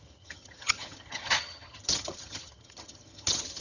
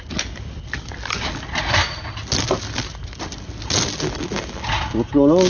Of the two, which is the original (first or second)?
second